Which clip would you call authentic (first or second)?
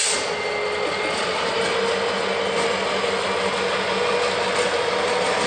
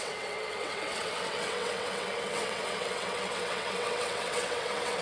first